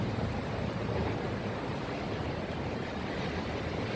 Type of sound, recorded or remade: remade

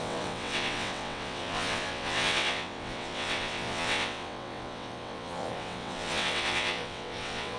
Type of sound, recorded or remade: remade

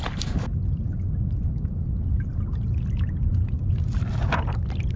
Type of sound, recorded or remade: recorded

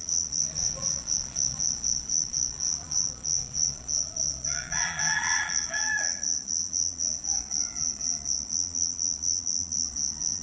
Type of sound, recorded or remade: remade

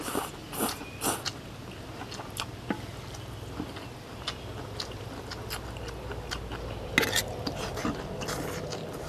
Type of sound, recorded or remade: recorded